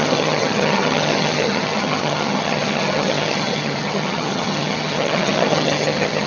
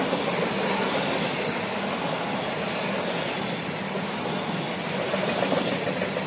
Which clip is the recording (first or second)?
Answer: second